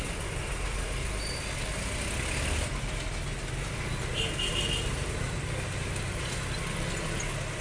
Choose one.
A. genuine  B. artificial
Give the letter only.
A